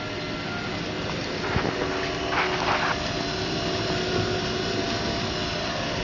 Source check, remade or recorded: recorded